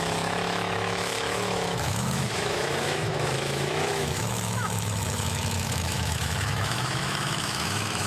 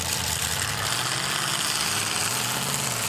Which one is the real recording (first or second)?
second